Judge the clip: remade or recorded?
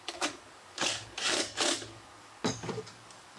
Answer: remade